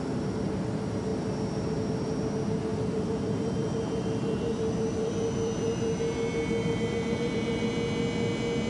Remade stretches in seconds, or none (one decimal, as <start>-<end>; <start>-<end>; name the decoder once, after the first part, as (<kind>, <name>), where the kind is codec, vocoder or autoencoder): 2.7-6.0 (vocoder, BigVGAN v2); 6.6-7.7